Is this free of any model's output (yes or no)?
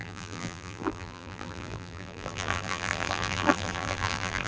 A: no